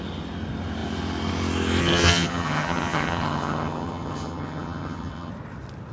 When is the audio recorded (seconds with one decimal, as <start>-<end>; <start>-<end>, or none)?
0.0-1.8; 5.3-5.9